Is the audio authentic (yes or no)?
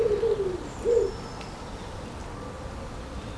yes